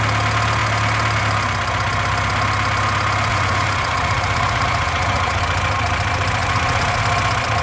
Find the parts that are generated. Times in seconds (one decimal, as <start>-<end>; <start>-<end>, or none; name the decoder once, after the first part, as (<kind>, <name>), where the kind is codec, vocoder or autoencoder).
3.3-5.4 (vocoder, Vocos); 6.4-7.0